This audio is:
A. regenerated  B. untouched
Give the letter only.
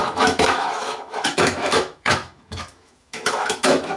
A